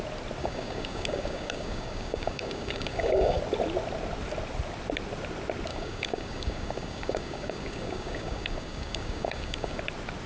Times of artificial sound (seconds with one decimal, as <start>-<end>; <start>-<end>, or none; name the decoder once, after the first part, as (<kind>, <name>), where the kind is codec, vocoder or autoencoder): 0.4-3.4 (codec, DAC); 5.7-9.8